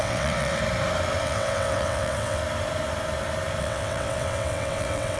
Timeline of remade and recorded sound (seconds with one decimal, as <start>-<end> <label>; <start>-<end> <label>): 0.0-0.6 remade; 0.6-1.2 recorded; 1.2-2.4 remade; 2.4-3.6 recorded; 3.6-5.2 remade